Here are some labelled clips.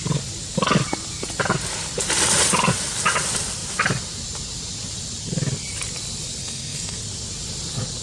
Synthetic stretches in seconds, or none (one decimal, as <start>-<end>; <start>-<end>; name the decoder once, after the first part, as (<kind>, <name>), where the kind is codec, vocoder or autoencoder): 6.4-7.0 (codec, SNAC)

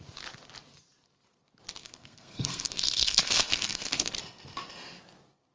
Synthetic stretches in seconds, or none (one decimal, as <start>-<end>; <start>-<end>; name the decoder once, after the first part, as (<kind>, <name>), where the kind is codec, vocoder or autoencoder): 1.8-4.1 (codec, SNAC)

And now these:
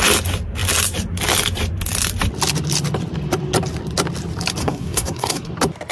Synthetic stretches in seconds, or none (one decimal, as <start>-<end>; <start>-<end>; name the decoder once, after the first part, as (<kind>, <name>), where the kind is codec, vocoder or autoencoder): 4.6-5.5 (codec, SNAC)